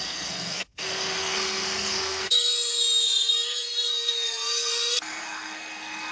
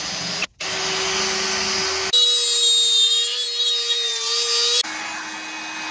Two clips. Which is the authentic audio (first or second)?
second